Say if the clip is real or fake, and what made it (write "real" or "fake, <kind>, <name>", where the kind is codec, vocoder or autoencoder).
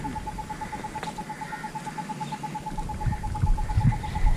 real